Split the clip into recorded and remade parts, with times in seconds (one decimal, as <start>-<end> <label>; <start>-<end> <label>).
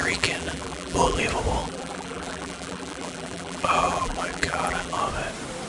0.0-1.2 remade; 1.2-1.6 recorded; 1.6-5.0 remade; 5.0-5.7 recorded